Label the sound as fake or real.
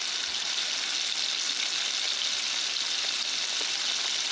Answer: real